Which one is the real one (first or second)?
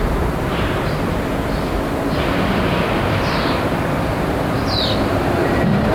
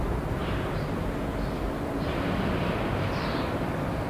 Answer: second